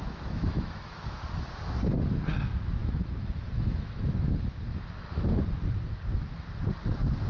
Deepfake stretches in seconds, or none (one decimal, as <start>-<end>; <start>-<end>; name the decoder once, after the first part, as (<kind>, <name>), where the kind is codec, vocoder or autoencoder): 0.0-1.2 (autoencoder, DAC-VAE); 2.8-4.1; 4.7-5.4